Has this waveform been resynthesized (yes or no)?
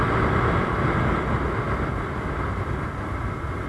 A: no